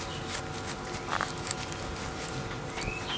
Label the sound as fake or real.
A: real